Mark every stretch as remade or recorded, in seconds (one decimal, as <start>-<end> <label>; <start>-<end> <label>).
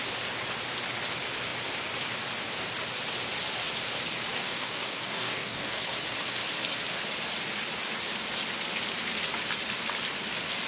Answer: 0.0-4.3 recorded; 4.3-5.8 remade; 5.8-10.7 recorded